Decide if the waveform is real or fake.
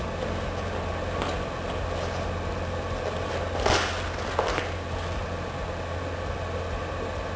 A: real